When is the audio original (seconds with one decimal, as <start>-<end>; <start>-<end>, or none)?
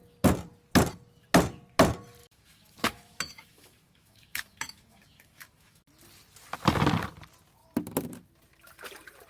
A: 0.0-2.2; 5.8-9.3